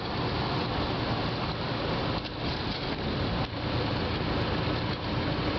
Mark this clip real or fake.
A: real